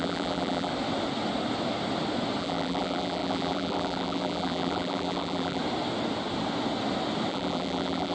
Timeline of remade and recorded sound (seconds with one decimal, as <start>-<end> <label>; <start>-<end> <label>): 0.0-0.7 remade; 0.7-2.4 recorded; 2.4-5.6 remade; 5.6-7.3 recorded; 7.3-8.1 remade